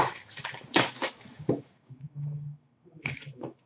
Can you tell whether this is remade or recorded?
remade